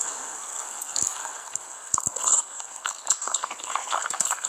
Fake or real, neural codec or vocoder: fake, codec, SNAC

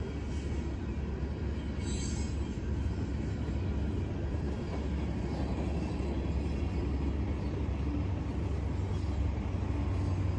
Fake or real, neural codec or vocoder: real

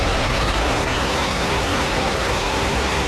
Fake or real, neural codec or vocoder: fake, codec, SNAC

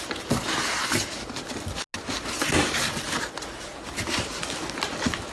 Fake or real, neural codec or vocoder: real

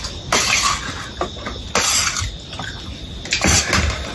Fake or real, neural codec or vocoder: real